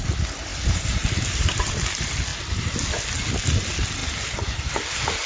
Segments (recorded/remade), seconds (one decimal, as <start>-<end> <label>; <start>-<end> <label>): 0.0-0.5 recorded; 0.5-1.7 remade; 1.7-5.3 recorded